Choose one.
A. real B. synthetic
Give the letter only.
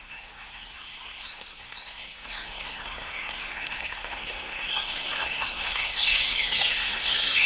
B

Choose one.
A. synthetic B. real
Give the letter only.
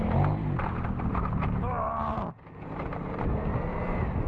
A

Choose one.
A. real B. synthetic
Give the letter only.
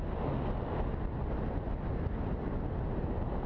A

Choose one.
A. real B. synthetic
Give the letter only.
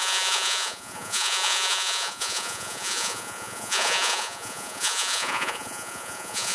B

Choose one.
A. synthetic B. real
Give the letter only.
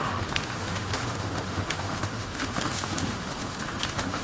A